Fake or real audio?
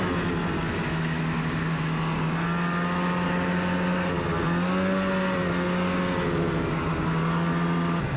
real